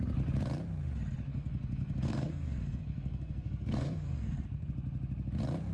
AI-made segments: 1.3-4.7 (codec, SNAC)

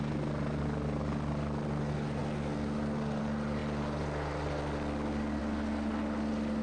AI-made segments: none

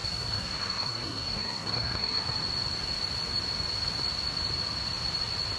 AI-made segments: 0.0-2.2 (codec, SNAC)

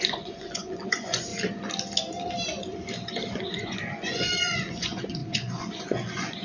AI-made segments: 0.0-1.3 (vocoder, Vocos); 3.4-6.4

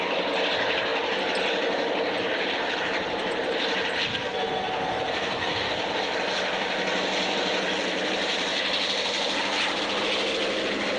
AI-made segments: 4.1-5.7 (codec, SNAC)

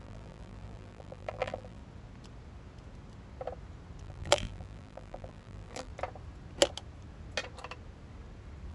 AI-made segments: 0.0-1.8 (vocoder, BigVGAN v2); 4.0-5.9